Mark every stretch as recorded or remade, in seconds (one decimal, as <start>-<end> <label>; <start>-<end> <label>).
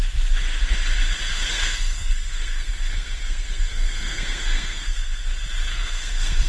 0.0-1.3 recorded; 1.3-5.2 remade; 5.2-5.7 recorded; 5.7-6.5 remade